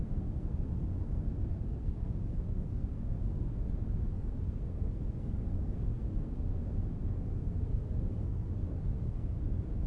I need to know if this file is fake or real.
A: fake